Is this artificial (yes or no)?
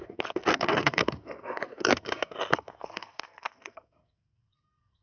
yes